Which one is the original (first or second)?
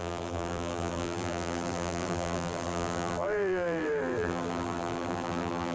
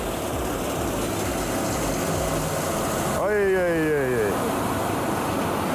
second